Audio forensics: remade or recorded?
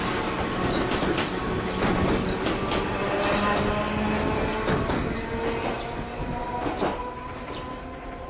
recorded